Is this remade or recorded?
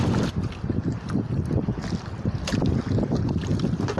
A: recorded